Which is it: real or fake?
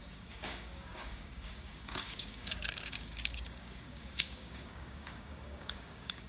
fake